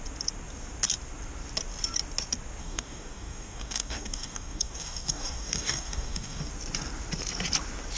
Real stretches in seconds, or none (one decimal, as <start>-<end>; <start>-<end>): 0.0-2.6; 6.5-8.0